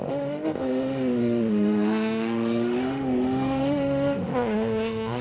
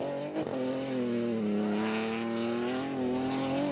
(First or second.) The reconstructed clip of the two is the first